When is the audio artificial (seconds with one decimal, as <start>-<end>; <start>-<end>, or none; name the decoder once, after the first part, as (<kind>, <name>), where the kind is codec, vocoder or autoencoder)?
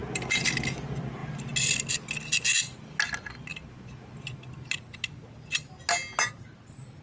none